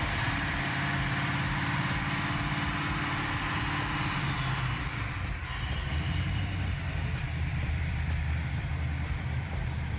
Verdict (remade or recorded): remade